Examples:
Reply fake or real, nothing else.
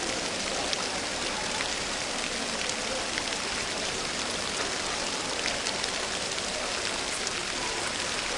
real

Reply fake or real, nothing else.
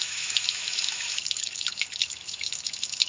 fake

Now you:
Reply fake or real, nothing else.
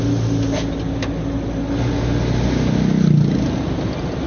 real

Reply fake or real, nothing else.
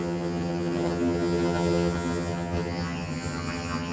fake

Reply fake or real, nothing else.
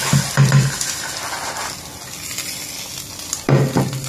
real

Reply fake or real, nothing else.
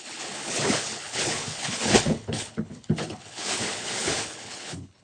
fake